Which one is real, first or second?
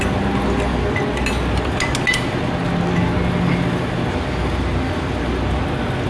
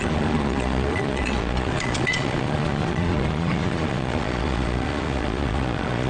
first